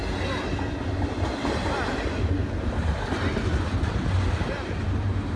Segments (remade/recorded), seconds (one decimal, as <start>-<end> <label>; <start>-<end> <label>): 0.0-5.4 recorded